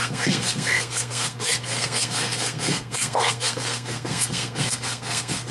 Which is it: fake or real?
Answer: fake